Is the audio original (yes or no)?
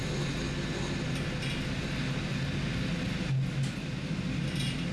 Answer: yes